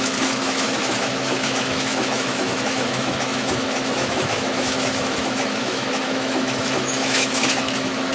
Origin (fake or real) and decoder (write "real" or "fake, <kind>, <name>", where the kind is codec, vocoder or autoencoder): fake, autoencoder, DAC-VAE